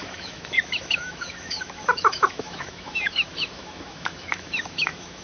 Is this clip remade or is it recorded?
remade